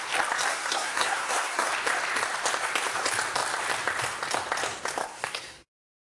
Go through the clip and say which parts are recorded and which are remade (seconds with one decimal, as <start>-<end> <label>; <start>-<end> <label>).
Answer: 0.0-0.5 recorded; 0.5-1.7 remade; 1.7-5.0 recorded; 5.0-6.1 remade